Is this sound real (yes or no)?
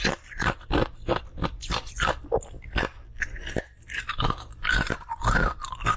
no